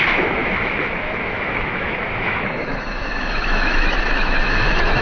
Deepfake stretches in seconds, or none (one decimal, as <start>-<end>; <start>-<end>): 0.0-5.0